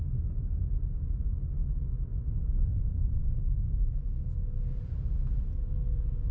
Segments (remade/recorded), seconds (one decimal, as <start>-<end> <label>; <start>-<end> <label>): 0.0-0.4 recorded; 0.4-1.5 remade; 1.5-2.1 recorded; 2.1-5.0 remade; 5.0-6.3 recorded